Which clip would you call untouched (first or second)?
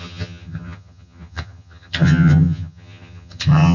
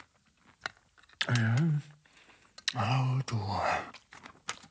second